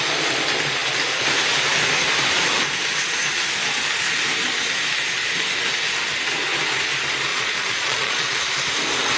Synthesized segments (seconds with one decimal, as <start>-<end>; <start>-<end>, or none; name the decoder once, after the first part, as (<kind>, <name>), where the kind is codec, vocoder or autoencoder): 7.3-8.4 (vocoder, Vocos)